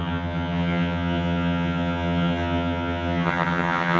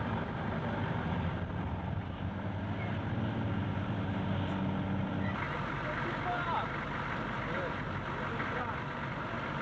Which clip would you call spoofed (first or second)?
first